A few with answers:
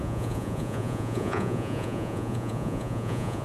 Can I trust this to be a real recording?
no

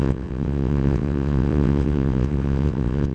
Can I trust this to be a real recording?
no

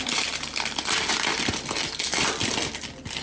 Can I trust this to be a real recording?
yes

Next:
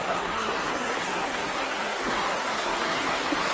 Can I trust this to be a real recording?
no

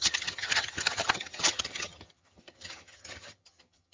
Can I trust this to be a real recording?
no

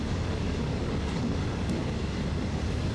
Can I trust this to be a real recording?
no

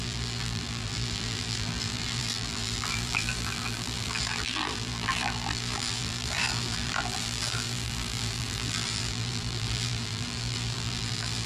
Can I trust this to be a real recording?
no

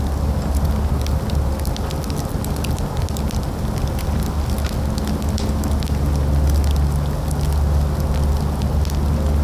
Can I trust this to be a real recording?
yes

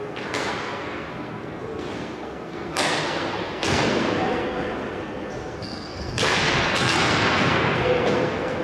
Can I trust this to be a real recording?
no